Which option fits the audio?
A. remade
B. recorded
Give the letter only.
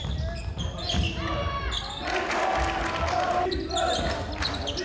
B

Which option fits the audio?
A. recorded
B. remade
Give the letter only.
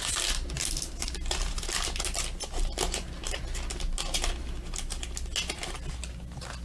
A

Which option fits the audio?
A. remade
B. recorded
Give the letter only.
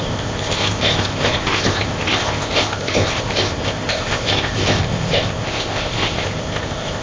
A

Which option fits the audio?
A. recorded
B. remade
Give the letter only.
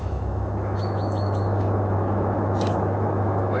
B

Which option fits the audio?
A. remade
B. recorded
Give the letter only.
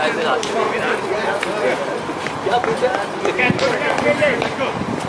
A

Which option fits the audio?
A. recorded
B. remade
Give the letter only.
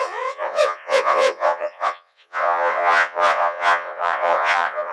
B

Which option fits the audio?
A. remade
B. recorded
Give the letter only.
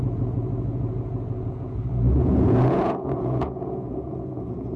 A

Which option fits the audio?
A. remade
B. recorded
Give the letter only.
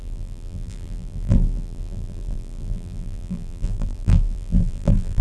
A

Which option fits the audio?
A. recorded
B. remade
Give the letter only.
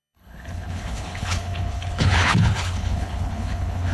B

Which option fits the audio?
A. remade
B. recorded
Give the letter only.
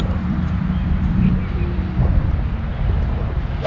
B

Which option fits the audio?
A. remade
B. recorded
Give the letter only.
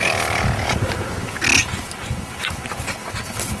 B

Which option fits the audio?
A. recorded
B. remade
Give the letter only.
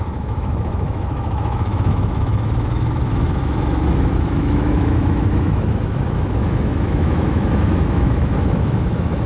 B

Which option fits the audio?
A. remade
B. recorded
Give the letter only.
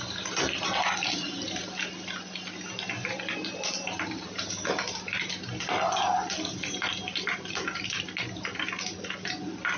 B